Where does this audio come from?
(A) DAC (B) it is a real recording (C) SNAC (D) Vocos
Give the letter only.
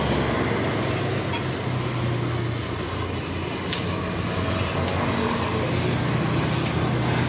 B